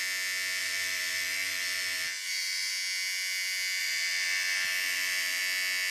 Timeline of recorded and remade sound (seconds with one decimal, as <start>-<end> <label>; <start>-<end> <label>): 0.0-0.6 recorded; 0.6-2.7 remade; 2.7-3.8 recorded; 3.8-5.4 remade; 5.4-5.9 recorded